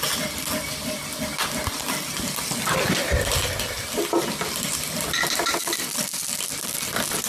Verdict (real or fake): real